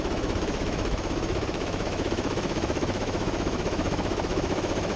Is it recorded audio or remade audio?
remade